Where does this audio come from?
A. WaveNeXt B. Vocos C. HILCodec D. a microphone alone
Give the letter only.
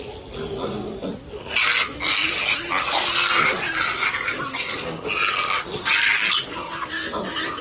D